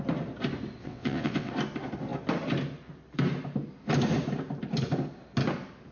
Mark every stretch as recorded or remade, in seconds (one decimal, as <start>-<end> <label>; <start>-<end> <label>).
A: 0.0-0.8 recorded; 0.8-1.5 remade; 1.5-5.9 recorded